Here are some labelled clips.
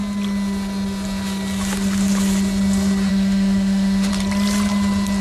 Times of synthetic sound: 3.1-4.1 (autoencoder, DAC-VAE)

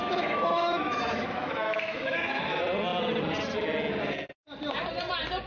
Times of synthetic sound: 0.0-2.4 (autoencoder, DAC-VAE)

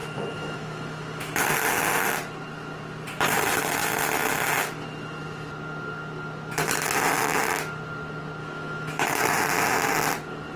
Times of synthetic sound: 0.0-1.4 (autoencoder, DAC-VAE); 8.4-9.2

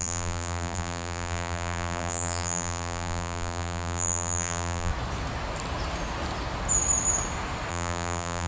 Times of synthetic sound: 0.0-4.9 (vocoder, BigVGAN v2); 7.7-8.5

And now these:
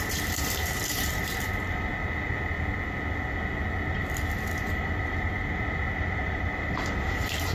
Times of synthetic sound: 0.0-1.9 (vocoder, BigVGAN v2); 4.6-7.5

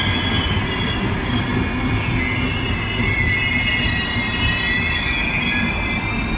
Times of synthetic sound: none

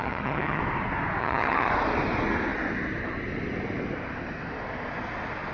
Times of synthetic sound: 0.0-0.6 (vocoder, HiFi-GAN); 1.2-1.7

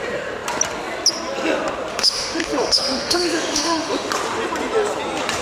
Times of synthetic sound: 1.9-4.1 (autoencoder, DAC-VAE)